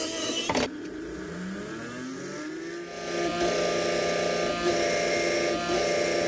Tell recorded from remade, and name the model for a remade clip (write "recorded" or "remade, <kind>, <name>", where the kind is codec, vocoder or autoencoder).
recorded